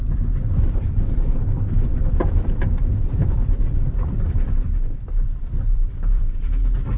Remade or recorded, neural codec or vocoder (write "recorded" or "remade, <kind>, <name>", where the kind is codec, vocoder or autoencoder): remade, vocoder, BigVGAN v2